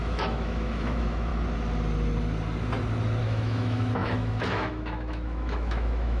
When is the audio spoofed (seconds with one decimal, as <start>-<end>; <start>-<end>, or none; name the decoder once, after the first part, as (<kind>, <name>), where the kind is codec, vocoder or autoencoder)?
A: 0.0-1.3 (autoencoder, DAC-VAE); 3.2-6.2